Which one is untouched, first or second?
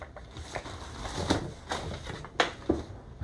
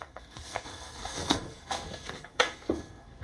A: first